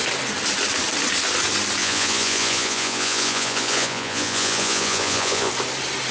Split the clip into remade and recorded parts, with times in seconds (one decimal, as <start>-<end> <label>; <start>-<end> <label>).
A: 0.0-1.8 recorded; 1.8-5.5 remade; 5.5-6.1 recorded